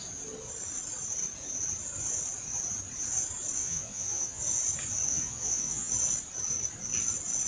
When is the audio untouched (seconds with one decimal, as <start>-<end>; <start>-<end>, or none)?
0.0-3.6; 4.4-5.1; 5.9-7.5